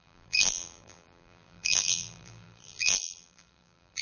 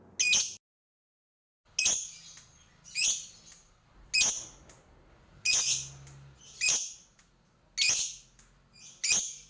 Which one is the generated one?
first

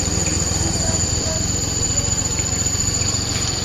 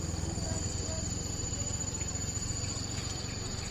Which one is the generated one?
first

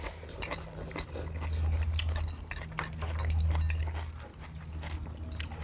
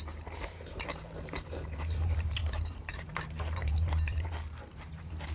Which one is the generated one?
second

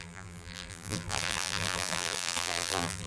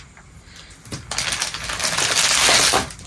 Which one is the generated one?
first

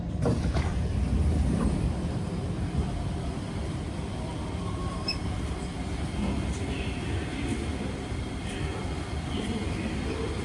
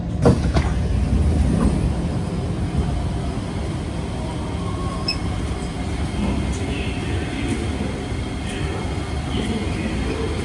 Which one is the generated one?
first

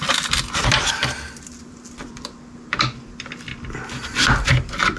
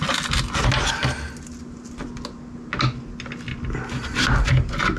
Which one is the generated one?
first